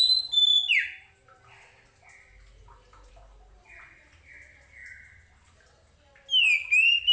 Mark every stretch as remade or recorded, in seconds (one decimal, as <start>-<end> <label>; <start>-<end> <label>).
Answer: 0.0-7.1 recorded